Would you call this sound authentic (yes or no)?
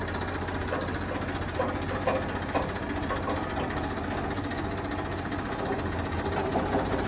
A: yes